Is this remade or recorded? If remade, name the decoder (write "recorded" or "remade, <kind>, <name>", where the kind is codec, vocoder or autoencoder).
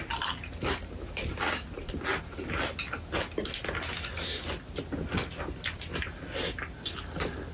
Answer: recorded